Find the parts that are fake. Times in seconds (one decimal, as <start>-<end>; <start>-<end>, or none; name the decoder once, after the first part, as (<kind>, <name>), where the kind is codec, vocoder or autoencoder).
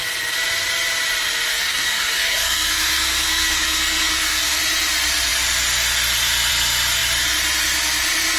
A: 1.5-4.6 (codec, SNAC)